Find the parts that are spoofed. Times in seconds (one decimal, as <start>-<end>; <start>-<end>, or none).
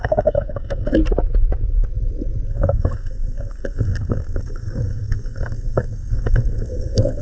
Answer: 0.0-1.0; 2.5-7.2